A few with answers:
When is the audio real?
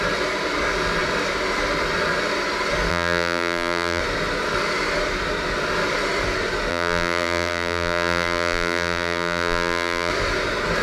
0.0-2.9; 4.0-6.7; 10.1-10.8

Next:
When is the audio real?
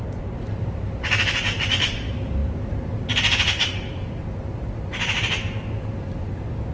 none